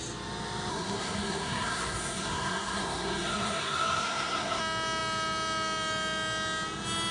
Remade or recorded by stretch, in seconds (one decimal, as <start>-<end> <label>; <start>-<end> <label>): 0.0-0.7 recorded; 0.7-4.6 remade; 4.6-7.1 recorded